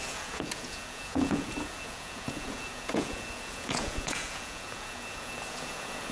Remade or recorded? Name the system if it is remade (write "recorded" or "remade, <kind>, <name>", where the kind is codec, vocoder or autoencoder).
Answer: remade, vocoder, Vocos